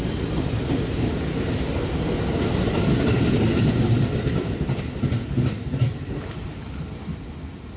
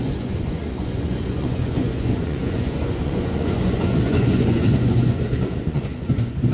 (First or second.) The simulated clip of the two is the second